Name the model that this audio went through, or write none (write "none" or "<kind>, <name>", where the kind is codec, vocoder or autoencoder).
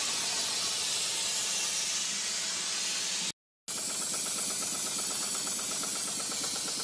none